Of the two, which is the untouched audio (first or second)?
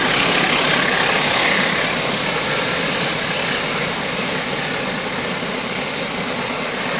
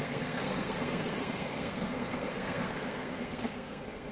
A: first